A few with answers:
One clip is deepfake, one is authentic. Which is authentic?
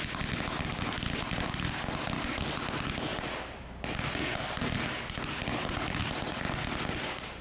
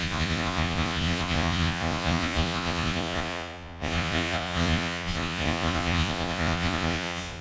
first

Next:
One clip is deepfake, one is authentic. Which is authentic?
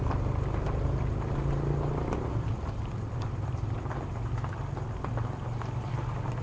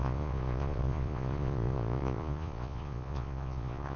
first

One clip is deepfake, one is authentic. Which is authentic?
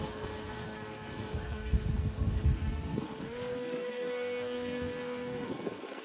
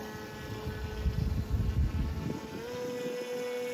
second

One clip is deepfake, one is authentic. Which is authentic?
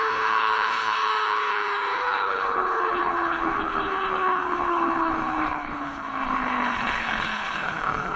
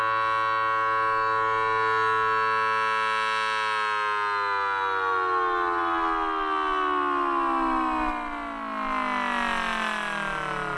second